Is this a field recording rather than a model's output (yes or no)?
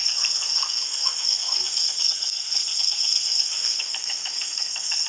no